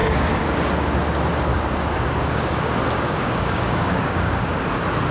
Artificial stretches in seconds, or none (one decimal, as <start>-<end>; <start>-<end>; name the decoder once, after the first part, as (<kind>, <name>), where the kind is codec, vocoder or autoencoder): 0.0-0.7 (codec, DAC); 1.5-4.6